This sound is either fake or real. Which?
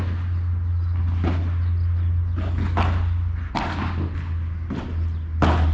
real